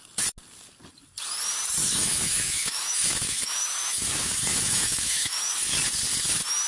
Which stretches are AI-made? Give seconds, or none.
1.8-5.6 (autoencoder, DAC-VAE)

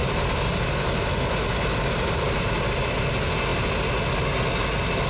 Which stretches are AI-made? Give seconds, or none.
none

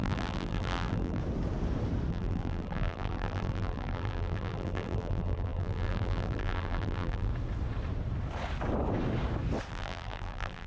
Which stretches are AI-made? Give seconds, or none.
0.0-1.2 (vocoder, BigVGAN v2); 2.1-7.3; 9.7-10.7

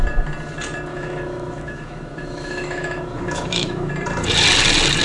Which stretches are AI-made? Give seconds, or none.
0.9-3.9 (autoencoder, DAC-VAE)